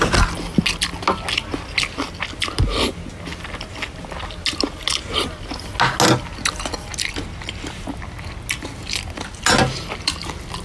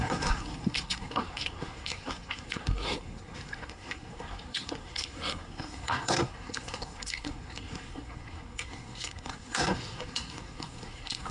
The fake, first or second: second